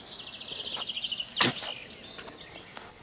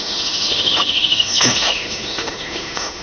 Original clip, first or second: first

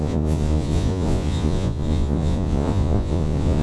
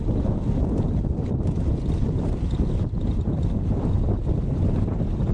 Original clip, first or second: second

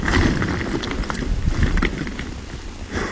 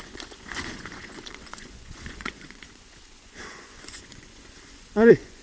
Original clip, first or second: first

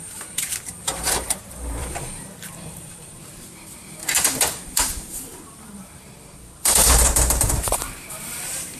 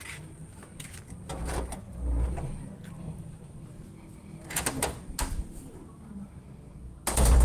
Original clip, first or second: second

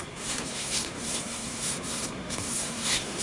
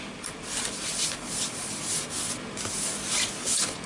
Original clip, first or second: second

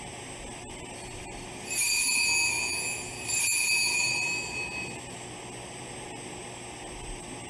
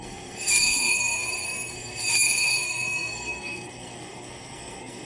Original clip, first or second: first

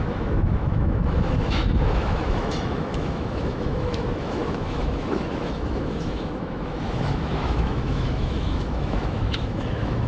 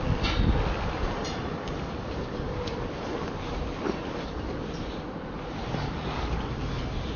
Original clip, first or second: second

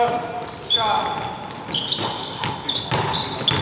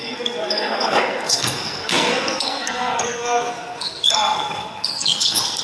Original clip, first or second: first